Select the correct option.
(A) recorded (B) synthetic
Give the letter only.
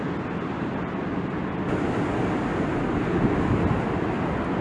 A